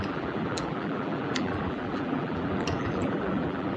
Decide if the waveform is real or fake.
fake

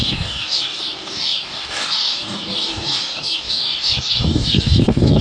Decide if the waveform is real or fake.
fake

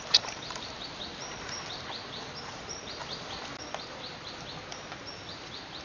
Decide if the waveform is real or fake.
real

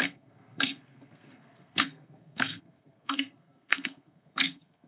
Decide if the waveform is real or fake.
fake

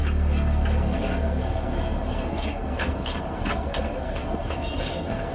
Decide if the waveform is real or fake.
fake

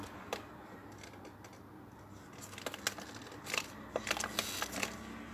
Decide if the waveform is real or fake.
real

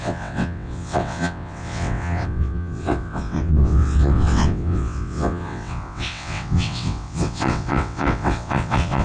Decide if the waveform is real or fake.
fake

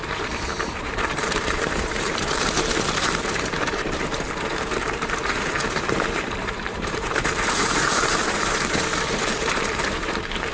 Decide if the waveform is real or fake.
fake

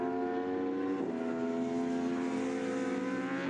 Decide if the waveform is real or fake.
real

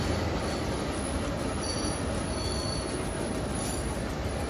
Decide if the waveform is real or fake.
real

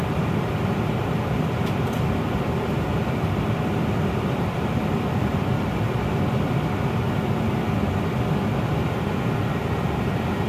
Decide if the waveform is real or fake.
fake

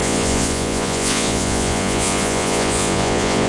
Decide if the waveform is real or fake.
fake